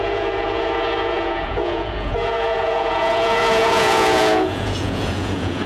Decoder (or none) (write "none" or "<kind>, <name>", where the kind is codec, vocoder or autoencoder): vocoder, Vocos